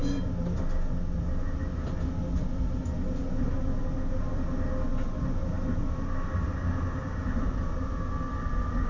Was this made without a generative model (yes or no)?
yes